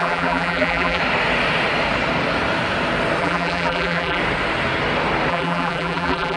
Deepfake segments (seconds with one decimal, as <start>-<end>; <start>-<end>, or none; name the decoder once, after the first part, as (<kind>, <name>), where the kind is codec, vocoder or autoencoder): 0.0-1.0 (vocoder, BigVGAN v2); 3.2-4.2; 5.3-6.4